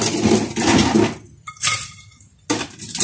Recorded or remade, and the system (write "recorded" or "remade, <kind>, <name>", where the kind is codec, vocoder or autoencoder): recorded